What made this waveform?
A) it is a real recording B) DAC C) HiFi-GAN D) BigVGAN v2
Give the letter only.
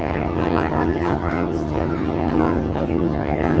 C